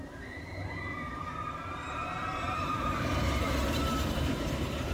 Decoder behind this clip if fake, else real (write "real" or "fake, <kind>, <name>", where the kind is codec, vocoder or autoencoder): fake, vocoder, BigVGAN v2